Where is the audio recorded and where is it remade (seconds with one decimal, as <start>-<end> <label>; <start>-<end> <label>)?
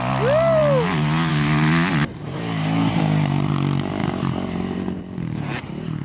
0.0-2.1 recorded; 2.1-3.5 remade; 3.5-4.0 recorded; 4.0-5.0 remade; 5.0-6.0 recorded